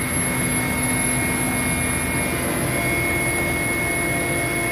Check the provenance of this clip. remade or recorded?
recorded